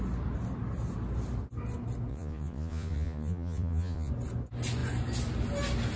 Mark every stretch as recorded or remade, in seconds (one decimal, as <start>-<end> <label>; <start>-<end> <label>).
0.0-2.1 recorded; 2.1-4.1 remade; 4.1-6.0 recorded

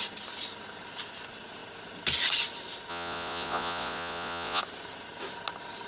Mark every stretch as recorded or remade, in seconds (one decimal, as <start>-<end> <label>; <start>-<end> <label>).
0.0-2.9 recorded; 2.9-4.6 remade; 4.6-5.9 recorded

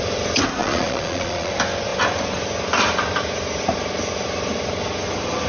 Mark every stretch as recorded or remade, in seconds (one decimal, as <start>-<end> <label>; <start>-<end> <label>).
0.0-0.6 recorded; 0.6-1.5 remade; 1.5-5.5 recorded

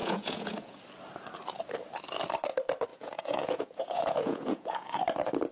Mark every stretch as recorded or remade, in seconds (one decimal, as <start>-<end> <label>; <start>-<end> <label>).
0.0-0.8 remade; 0.8-2.9 recorded; 2.9-5.0 remade; 5.0-5.5 recorded

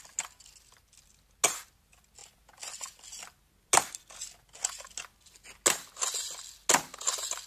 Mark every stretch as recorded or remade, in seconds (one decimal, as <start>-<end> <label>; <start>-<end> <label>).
0.0-7.5 recorded